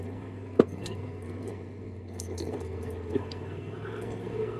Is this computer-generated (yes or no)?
yes